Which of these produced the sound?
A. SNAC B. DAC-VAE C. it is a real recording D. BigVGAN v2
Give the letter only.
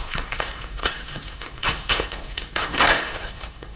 A